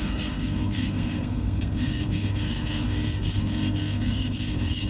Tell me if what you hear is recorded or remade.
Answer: remade